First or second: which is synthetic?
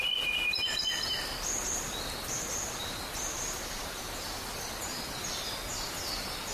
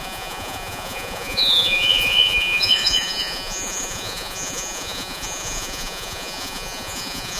second